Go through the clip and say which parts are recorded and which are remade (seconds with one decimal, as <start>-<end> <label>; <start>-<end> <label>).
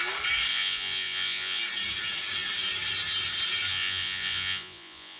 0.0-0.5 recorded; 0.5-1.6 remade; 1.6-3.7 recorded; 3.7-5.2 remade